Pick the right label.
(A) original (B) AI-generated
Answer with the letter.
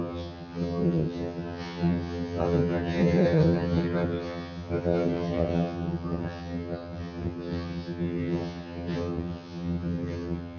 B